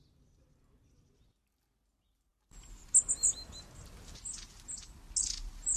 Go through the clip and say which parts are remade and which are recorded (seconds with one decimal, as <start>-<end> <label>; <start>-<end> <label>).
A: 0.0-5.8 recorded